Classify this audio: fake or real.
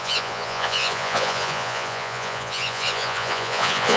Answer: fake